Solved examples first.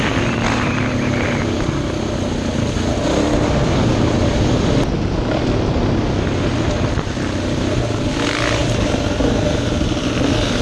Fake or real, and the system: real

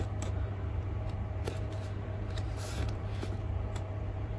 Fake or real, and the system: fake, vocoder, BigVGAN v2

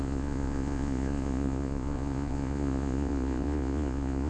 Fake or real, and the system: fake, vocoder, Vocos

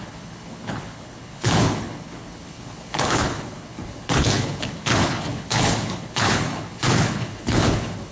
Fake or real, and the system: fake, codec, HILCodec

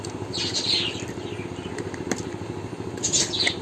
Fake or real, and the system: real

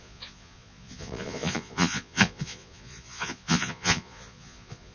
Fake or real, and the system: fake, vocoder, Vocos